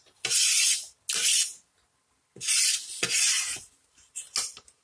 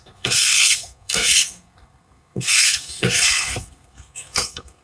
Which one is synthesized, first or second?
second